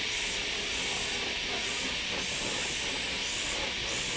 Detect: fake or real real